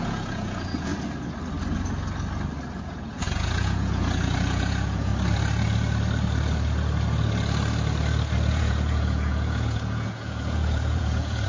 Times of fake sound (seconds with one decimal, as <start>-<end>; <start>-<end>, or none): 0.0-0.9; 2.8-5.1; 8.5-11.5